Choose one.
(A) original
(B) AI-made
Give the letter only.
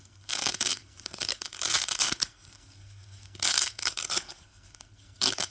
B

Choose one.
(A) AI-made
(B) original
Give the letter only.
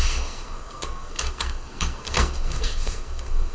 A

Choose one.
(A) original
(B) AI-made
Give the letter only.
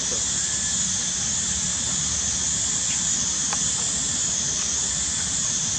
A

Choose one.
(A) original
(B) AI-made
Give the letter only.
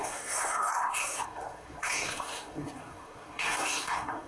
B